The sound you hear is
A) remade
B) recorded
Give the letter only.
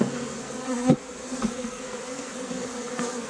A